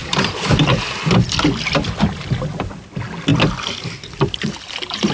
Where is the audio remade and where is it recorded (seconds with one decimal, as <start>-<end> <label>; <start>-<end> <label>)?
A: 0.0-2.2 remade; 2.2-3.3 recorded; 3.3-4.5 remade; 4.5-5.1 recorded